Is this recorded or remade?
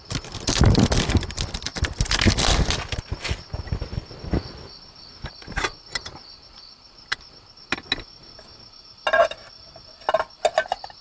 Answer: recorded